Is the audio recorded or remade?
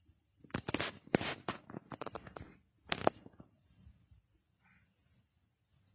recorded